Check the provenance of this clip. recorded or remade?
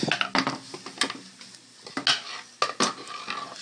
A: recorded